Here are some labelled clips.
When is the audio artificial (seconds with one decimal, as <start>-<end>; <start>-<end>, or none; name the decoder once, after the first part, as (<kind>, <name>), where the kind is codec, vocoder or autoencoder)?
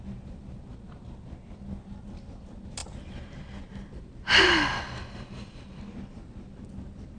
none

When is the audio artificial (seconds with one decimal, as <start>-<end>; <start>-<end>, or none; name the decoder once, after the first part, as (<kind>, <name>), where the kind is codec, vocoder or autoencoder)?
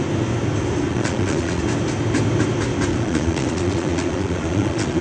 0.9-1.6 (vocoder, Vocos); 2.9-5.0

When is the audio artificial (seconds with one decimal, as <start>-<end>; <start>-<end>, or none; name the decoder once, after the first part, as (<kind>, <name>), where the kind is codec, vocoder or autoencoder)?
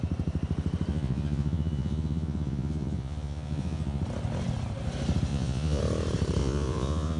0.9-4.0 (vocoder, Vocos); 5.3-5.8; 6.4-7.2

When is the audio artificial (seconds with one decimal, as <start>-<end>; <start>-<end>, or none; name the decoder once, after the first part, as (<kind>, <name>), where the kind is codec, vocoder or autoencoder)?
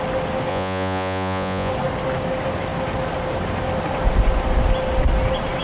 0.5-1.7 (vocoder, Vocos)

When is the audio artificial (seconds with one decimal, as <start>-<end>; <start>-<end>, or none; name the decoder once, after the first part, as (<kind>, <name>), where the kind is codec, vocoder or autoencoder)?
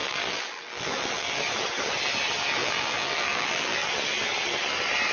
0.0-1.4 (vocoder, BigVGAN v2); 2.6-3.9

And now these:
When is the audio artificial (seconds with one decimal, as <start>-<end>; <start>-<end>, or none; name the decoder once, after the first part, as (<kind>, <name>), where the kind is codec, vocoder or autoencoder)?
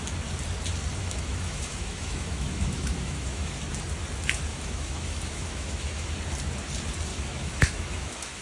1.0-3.6 (autoencoder, DAC-VAE); 4.5-6.1; 7.1-8.4